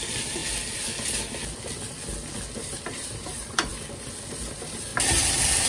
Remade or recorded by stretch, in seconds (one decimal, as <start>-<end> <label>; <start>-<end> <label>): 0.0-0.4 remade; 0.4-2.5 recorded; 2.5-3.7 remade; 3.7-4.4 recorded; 4.4-4.9 remade; 4.9-5.7 recorded